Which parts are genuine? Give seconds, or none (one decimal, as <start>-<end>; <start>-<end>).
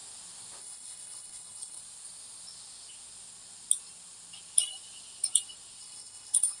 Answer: 0.0-0.6; 1.8-5.8